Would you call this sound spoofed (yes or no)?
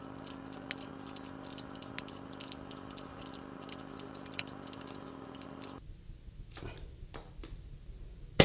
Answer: no